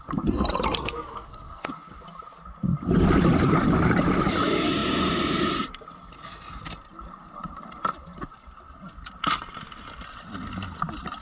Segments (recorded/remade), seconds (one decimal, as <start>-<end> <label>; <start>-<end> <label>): 0.0-0.8 recorded; 0.8-1.7 remade; 1.7-11.2 recorded